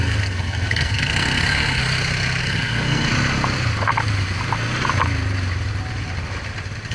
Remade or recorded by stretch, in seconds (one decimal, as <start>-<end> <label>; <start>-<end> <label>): 0.0-1.8 remade; 1.8-2.4 recorded; 2.4-3.1 remade; 3.1-6.9 recorded